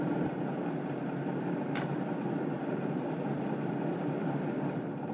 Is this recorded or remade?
recorded